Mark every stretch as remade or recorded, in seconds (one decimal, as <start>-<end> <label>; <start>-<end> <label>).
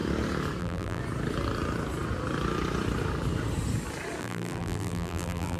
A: 0.0-0.6 recorded; 0.6-1.0 remade; 1.0-4.2 recorded; 4.2-5.6 remade